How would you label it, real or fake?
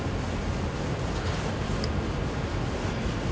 real